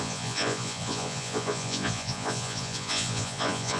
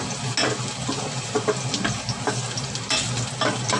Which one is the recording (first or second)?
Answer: second